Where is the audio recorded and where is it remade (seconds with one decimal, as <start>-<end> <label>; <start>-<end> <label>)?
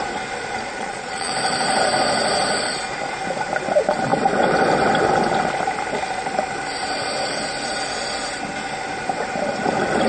0.0-0.7 recorded; 0.7-1.3 remade; 1.3-10.1 recorded